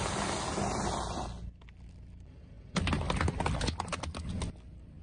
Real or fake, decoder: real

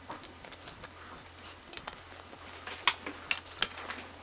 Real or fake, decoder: real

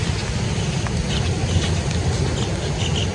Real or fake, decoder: real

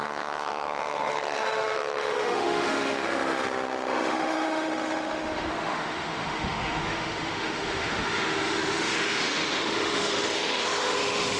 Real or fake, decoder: fake, autoencoder, DAC-VAE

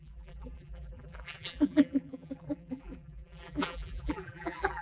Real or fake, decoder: fake, vocoder, BigVGAN v2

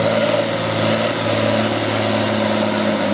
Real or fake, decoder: real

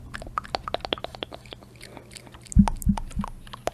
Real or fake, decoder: real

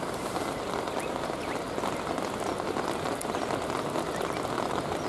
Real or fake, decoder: real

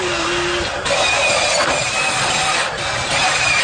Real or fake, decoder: real